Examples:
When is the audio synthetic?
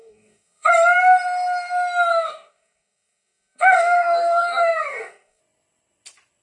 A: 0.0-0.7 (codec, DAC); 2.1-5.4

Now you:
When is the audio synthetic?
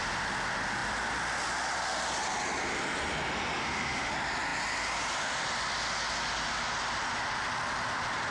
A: 3.6-4.1 (autoencoder, DAC-VAE)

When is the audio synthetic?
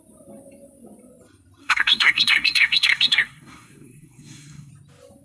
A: 1.6-4.7 (codec, SNAC)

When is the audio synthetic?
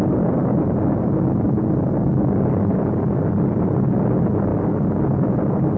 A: none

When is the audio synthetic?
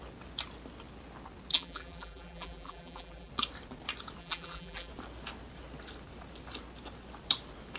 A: 1.5-3.3 (vocoder, BigVGAN v2); 4.2-4.9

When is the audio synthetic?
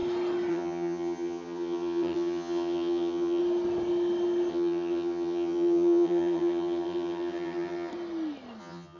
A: 0.5-3.4 (vocoder, HiFi-GAN); 4.5-7.9; 8.6-9.0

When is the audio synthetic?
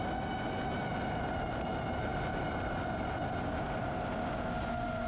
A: none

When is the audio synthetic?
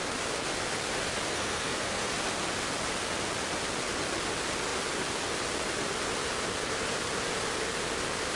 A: 1.3-2.1 (codec, SNAC)